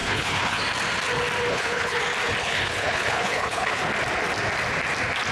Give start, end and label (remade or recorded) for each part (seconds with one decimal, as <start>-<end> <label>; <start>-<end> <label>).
0.0-0.6 remade; 0.6-1.5 recorded; 1.5-2.0 remade; 2.0-2.4 recorded; 2.4-3.8 remade; 3.8-5.3 recorded

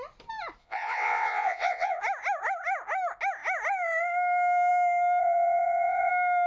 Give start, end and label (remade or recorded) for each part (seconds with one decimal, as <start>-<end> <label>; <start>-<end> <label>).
0.0-0.6 recorded; 0.6-2.0 remade; 2.0-5.2 recorded; 5.2-6.1 remade; 6.1-6.5 recorded

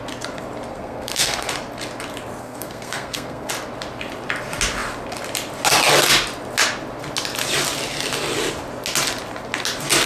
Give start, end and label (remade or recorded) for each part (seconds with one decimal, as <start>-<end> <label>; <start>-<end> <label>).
0.0-0.7 recorded; 0.7-1.5 remade; 1.5-2.4 recorded; 2.4-3.5 remade; 3.5-10.1 recorded

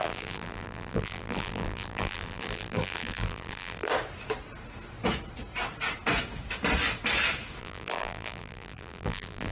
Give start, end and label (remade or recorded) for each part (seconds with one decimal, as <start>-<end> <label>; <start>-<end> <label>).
0.0-3.9 remade; 3.9-7.6 recorded; 7.6-9.5 remade

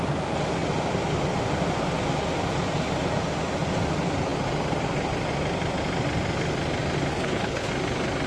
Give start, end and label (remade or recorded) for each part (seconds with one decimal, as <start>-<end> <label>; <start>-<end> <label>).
0.0-7.1 recorded; 7.1-7.7 remade; 7.7-8.3 recorded

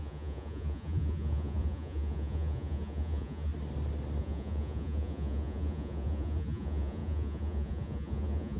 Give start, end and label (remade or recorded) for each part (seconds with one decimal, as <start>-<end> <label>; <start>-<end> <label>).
0.0-3.5 remade; 3.5-4.2 recorded; 4.2-8.6 remade